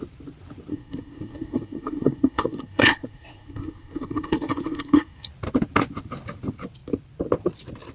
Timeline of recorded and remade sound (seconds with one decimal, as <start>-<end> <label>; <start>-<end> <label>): 0.0-0.7 recorded; 0.7-5.3 remade; 5.3-7.9 recorded